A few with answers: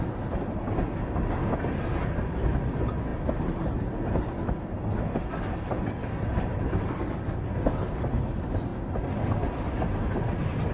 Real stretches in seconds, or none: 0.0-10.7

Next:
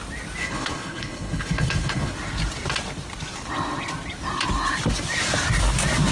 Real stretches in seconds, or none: 0.0-0.4; 2.1-6.1